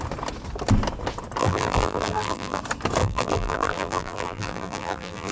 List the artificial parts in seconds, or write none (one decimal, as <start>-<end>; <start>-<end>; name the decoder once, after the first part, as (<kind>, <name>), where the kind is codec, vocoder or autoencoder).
1.4-2.6 (vocoder, BigVGAN v2); 3.0-5.3